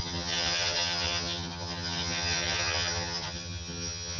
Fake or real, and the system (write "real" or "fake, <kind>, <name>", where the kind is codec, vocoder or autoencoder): fake, vocoder, HiFi-GAN